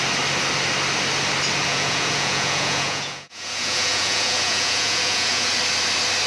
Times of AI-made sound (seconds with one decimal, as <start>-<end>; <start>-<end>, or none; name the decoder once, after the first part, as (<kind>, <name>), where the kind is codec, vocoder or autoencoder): 1.7-5.5 (vocoder, Vocos)